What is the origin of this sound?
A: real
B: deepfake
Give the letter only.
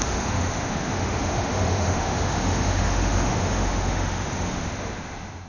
B